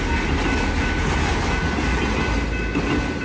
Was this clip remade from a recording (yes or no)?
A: no